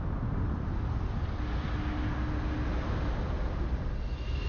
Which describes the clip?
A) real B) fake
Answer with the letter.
A